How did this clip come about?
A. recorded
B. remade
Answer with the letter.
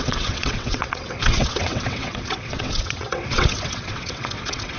B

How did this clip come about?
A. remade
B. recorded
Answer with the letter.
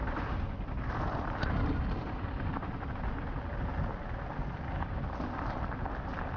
B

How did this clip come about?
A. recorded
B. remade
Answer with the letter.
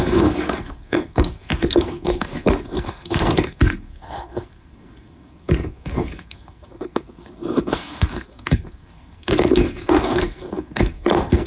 B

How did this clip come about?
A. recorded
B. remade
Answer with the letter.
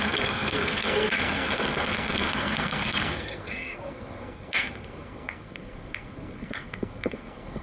B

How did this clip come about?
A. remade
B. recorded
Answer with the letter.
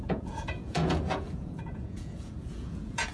A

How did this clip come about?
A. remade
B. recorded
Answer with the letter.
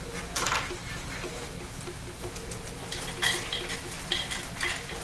B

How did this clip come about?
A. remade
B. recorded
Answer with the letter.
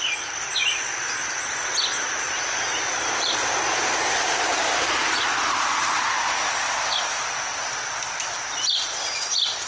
B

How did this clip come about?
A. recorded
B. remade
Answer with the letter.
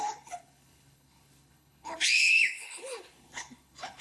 B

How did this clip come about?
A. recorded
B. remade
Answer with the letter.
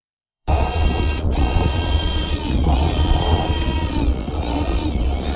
B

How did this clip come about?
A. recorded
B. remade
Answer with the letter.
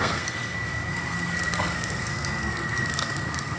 B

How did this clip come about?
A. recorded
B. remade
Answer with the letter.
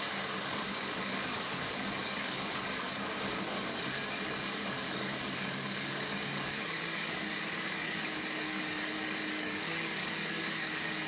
B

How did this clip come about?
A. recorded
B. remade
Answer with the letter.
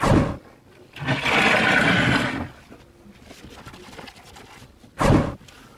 A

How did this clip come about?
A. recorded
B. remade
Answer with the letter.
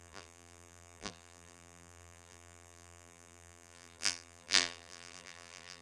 B